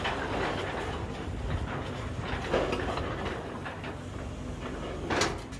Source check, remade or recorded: recorded